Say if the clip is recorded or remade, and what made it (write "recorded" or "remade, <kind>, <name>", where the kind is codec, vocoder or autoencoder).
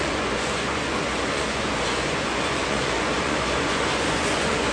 remade, vocoder, Vocos